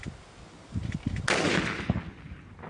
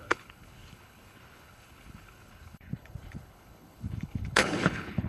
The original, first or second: first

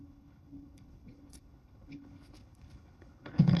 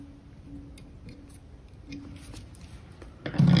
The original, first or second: second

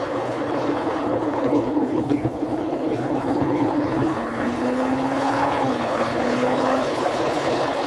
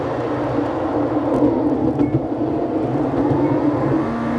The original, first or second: second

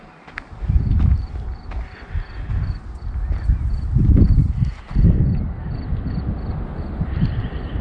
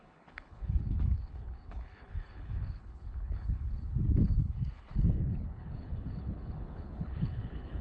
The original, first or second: first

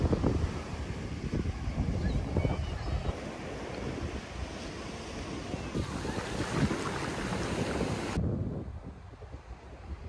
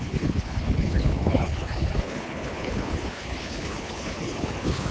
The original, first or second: first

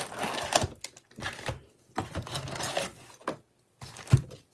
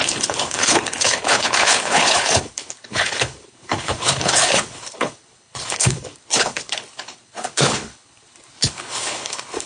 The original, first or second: first